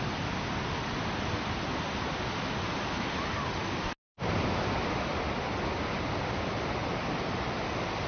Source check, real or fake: real